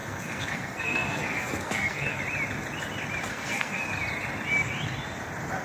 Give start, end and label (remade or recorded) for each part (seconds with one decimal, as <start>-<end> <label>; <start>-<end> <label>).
0.0-2.2 remade; 2.2-3.3 recorded; 3.3-3.8 remade; 3.8-5.6 recorded